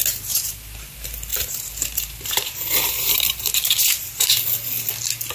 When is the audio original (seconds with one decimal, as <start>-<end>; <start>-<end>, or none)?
0.0-1.3; 4.3-5.3